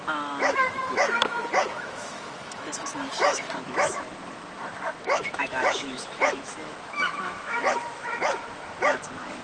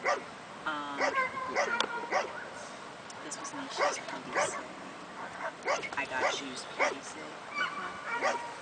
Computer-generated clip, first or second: first